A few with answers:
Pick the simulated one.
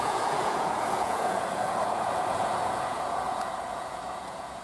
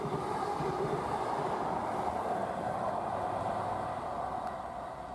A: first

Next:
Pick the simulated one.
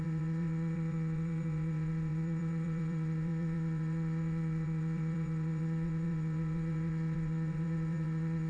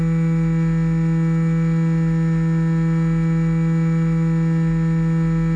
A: first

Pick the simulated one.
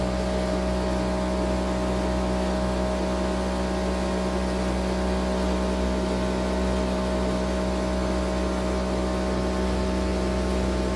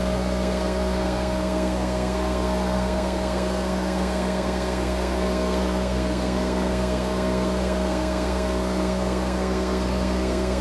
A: second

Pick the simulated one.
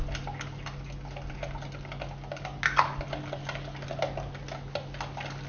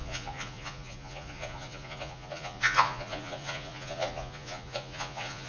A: second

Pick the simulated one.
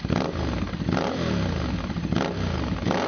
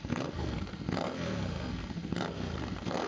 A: second